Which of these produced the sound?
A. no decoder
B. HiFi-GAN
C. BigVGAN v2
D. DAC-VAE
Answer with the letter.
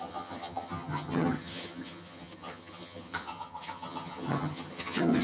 B